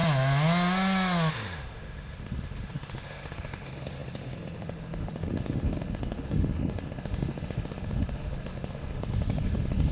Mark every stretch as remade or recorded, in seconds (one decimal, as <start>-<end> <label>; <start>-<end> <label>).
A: 0.0-1.3 recorded; 1.3-9.9 remade